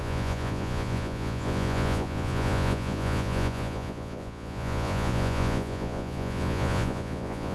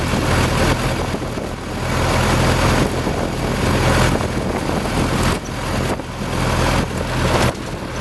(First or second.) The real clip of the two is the second